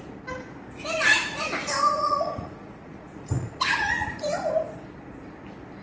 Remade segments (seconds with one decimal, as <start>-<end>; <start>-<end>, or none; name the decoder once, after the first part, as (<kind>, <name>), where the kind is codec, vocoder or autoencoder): 1.1-4.5 (vocoder, Vocos)